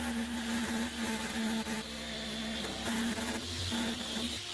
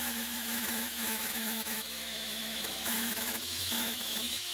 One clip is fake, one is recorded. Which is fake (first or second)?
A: second